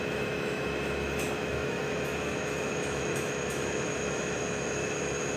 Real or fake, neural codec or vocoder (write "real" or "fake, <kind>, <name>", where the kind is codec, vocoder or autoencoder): fake, autoencoder, DAC-VAE